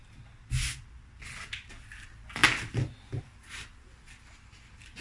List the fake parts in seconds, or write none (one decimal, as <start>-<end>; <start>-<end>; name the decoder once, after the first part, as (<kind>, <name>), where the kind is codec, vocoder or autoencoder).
none